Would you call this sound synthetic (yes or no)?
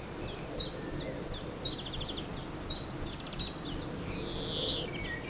no